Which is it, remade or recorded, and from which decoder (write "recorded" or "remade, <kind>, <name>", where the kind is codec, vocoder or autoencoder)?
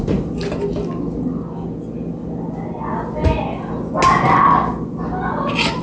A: recorded